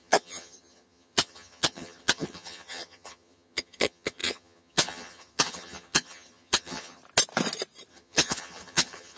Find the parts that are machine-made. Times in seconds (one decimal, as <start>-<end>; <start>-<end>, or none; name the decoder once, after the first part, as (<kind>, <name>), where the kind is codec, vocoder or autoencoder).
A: 0.0-7.0 (vocoder, HiFi-GAN); 7.9-9.2